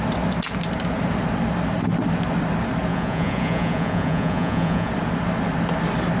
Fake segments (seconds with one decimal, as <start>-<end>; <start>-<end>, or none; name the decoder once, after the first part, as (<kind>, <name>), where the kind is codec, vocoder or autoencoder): 2.9-4.9 (vocoder, Vocos)